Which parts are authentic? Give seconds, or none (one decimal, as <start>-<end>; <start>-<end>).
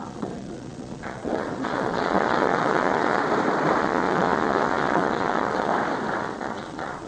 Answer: 3.2-3.8; 5.7-6.2